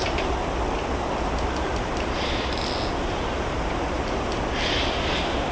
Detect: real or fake real